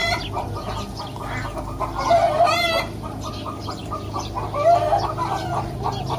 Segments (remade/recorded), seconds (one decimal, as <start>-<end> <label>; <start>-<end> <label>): 0.0-3.3 recorded; 3.3-6.2 remade